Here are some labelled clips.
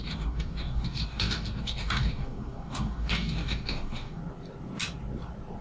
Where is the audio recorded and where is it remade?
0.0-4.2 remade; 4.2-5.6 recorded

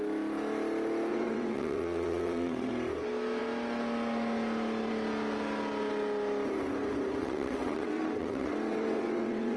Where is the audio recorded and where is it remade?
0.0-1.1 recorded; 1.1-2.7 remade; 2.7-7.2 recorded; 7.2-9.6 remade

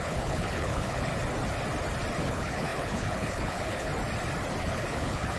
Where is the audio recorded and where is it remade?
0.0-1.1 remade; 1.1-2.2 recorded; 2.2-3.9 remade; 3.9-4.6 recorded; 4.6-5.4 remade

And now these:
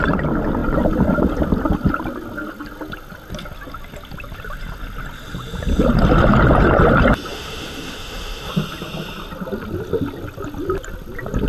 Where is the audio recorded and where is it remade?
0.0-7.3 recorded; 7.3-8.5 remade; 8.5-11.5 recorded